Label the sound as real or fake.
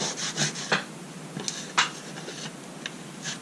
real